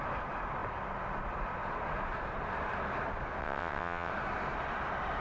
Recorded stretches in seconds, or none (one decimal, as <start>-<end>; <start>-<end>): 0.0-3.4; 4.1-5.2